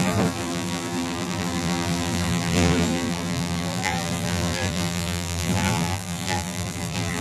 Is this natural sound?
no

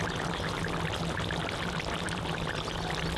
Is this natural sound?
yes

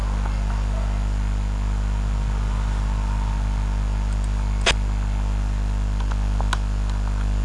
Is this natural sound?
yes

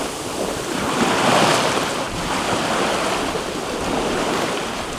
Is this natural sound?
yes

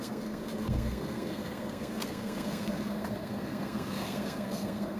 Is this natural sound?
no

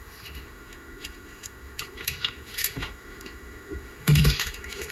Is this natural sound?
no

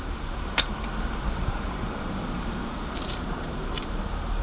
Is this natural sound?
no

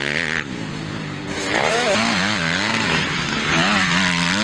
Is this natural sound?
yes